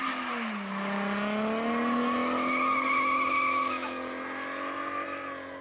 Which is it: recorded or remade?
recorded